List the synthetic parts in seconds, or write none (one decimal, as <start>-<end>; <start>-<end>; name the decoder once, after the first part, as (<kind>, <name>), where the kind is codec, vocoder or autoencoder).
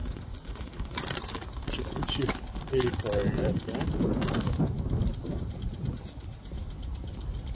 0.0-1.0 (vocoder, Vocos)